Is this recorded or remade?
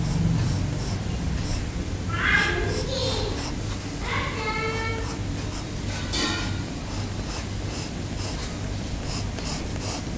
recorded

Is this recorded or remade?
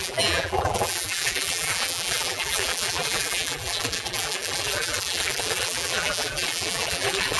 remade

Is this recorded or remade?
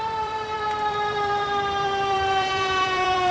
remade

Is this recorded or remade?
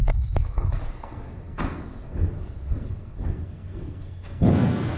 remade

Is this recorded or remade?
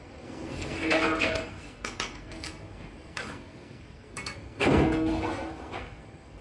remade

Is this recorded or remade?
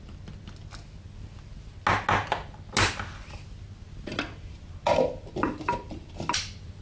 recorded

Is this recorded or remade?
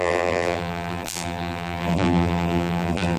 remade